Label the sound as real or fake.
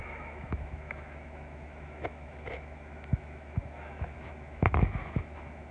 fake